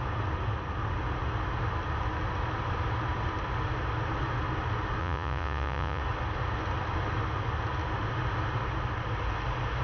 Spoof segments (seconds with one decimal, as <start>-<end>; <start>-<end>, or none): 5.0-6.0